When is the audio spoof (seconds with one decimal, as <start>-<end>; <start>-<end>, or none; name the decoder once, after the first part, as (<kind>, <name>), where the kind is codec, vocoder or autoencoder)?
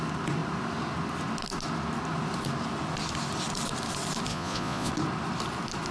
4.3-4.9 (vocoder, Vocos)